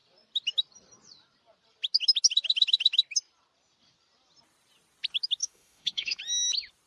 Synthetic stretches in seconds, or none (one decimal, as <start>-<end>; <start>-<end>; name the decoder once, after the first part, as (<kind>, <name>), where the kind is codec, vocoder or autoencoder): 5.4-6.2 (autoencoder, DAC-VAE)